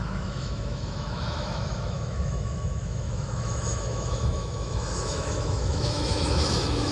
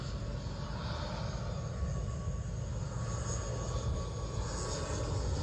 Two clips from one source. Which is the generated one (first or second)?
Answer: first